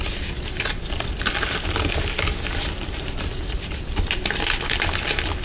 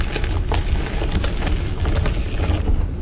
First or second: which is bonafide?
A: second